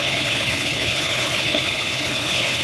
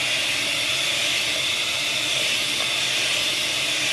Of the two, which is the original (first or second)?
second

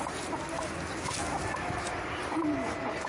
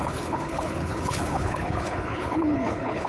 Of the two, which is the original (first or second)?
first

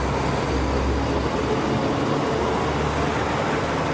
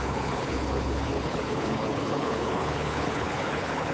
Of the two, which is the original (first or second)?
first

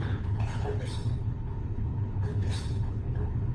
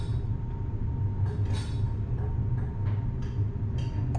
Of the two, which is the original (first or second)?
second